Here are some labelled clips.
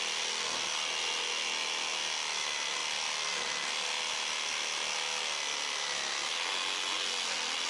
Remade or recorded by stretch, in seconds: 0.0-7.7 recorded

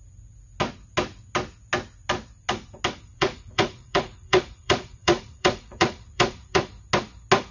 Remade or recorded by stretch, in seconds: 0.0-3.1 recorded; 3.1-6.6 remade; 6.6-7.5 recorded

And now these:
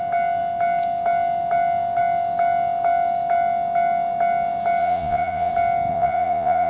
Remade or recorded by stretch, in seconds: 0.0-4.8 recorded; 4.8-5.5 remade; 5.5-5.9 recorded; 5.9-6.7 remade

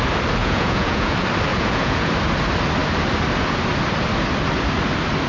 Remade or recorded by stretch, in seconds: 0.0-0.4 recorded; 0.4-1.1 remade; 1.1-1.5 recorded; 1.5-2.1 remade; 2.1-5.3 recorded

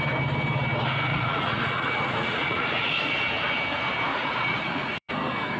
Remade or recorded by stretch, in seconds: 0.0-1.1 recorded; 1.1-3.1 remade; 3.1-4.1 recorded; 4.1-5.1 remade; 5.1-5.6 recorded